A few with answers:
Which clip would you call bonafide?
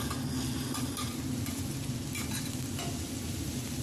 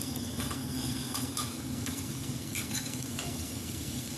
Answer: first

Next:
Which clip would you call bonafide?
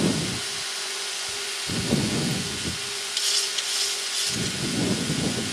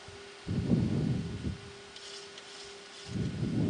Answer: second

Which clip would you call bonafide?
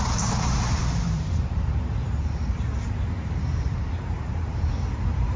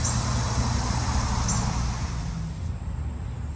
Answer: second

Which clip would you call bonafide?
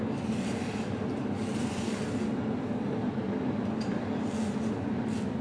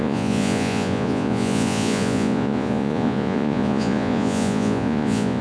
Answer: first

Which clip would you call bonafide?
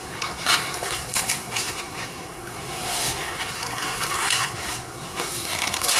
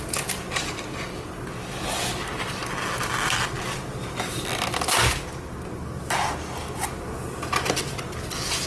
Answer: second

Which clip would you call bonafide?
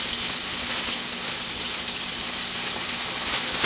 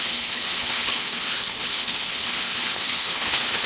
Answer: first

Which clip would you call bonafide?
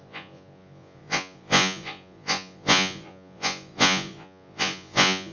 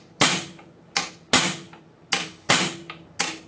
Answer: second